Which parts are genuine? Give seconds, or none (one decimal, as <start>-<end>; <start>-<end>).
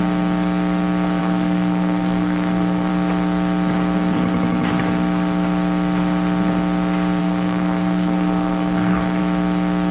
0.0-1.2; 2.9-7.2; 9.2-9.9